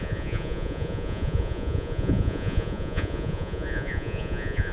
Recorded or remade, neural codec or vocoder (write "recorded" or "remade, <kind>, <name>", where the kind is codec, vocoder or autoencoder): remade, vocoder, Vocos